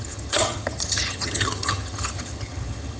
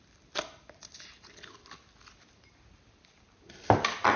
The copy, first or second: first